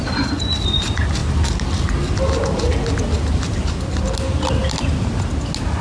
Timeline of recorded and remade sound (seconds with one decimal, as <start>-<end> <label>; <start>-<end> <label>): 0.0-5.8 recorded